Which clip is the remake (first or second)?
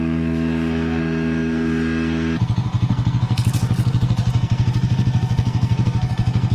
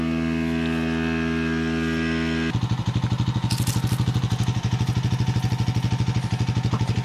first